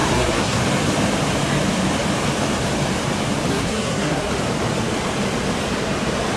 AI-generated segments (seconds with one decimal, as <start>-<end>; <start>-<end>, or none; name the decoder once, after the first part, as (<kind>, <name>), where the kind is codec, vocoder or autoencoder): 0.0-0.6 (codec, SNAC); 3.5-4.3